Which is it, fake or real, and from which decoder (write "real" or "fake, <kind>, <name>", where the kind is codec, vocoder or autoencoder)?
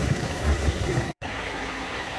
fake, codec, SNAC